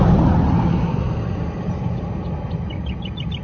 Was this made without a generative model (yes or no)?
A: yes